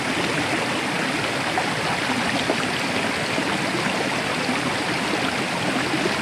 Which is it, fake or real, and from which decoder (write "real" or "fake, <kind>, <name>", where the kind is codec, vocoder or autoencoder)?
real